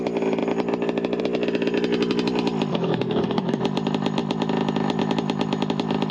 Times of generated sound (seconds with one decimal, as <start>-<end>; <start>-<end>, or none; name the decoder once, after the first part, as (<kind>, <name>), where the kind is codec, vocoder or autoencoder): 2.7-3.6 (codec, SNAC)